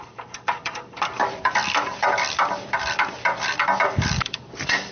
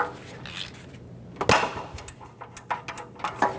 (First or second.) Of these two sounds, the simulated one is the first